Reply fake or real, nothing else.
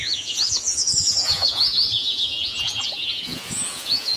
fake